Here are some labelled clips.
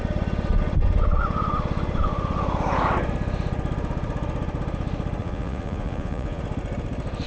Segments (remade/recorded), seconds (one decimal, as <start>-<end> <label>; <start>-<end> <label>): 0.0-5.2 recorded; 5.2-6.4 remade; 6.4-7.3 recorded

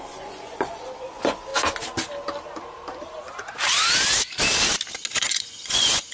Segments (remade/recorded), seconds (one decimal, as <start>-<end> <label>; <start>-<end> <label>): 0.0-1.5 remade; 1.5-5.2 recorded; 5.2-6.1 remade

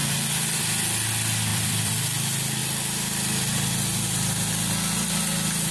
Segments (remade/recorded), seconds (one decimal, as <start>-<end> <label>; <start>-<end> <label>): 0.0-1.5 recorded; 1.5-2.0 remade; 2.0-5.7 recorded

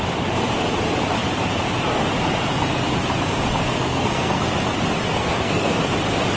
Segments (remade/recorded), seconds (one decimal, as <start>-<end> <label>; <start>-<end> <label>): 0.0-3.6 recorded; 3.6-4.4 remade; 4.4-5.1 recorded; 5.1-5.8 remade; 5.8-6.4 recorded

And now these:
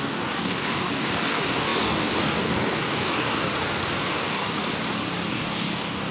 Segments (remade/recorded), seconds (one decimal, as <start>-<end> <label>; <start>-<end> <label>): 0.0-3.5 remade; 3.5-4.1 recorded; 4.1-4.6 remade; 4.6-5.3 recorded; 5.3-6.1 remade